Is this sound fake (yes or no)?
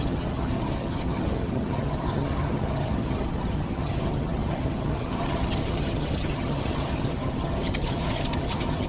yes